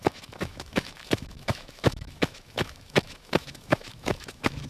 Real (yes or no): no